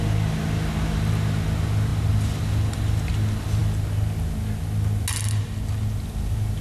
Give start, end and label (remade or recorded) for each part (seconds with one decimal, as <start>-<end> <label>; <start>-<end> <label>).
0.0-6.6 recorded